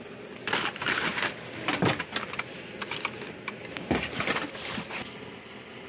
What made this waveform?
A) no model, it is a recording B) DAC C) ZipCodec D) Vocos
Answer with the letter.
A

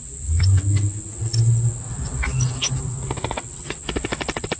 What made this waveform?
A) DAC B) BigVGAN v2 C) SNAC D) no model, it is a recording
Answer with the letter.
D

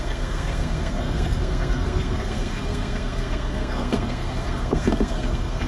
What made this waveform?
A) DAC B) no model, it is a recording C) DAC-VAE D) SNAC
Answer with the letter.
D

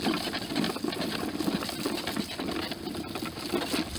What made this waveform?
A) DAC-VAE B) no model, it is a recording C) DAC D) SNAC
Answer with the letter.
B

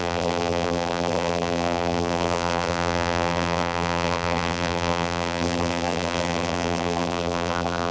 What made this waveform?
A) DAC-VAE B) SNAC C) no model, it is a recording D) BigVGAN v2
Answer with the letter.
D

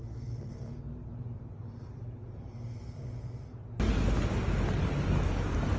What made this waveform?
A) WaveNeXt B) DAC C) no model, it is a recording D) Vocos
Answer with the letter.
C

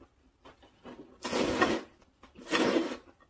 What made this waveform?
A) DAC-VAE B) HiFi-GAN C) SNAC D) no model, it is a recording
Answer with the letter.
D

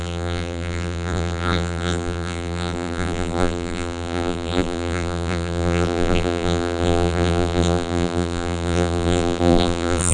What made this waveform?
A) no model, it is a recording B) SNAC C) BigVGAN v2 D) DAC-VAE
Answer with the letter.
C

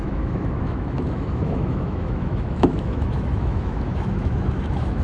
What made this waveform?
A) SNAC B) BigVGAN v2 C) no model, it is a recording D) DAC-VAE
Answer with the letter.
D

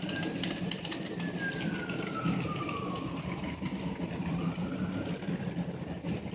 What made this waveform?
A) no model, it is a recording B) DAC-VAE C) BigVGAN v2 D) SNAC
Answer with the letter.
A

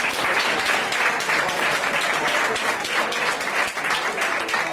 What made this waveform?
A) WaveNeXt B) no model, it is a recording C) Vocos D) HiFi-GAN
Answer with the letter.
B